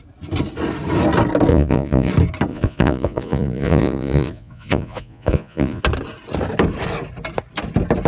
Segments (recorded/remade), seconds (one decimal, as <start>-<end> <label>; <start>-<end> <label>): 0.0-1.5 recorded; 1.5-2.1 remade; 2.1-2.5 recorded; 2.5-5.8 remade; 5.8-8.1 recorded

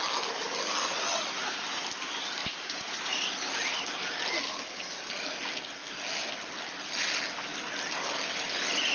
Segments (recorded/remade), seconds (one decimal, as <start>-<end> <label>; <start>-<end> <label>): 0.0-2.4 recorded; 2.4-3.3 remade; 3.3-8.9 recorded

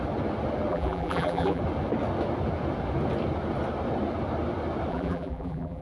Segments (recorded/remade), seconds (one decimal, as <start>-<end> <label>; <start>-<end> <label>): 0.0-0.7 recorded; 0.7-1.6 remade; 1.6-4.9 recorded; 4.9-5.8 remade

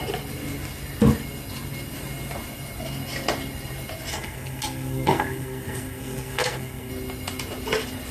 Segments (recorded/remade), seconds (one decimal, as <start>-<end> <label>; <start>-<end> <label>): 0.0-4.1 recorded; 4.1-6.9 remade; 6.9-8.1 recorded

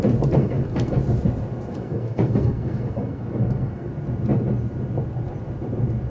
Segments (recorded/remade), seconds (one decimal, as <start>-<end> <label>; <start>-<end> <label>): 0.0-0.4 recorded; 0.4-1.0 remade; 1.0-1.7 recorded; 1.7-3.9 remade; 3.9-6.1 recorded

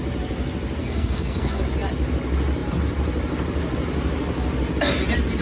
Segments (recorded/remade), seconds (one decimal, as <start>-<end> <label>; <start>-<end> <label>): 0.0-0.8 recorded; 0.8-1.6 remade; 1.6-5.4 recorded